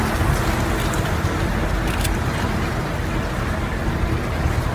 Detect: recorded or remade recorded